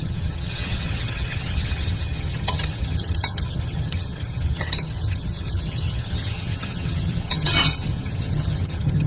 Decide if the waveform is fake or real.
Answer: fake